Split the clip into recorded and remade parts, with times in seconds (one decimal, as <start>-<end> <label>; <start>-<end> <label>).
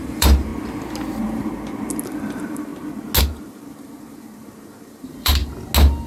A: 0.0-0.5 remade; 0.5-1.1 recorded; 1.1-1.5 remade; 1.5-2.2 recorded; 2.2-2.7 remade; 2.7-3.2 recorded; 3.2-5.4 remade; 5.4-6.1 recorded